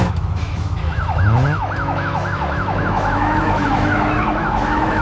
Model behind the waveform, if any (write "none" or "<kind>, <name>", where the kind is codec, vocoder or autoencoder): autoencoder, DAC-VAE